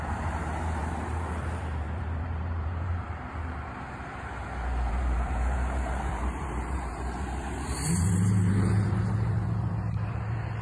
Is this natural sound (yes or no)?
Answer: no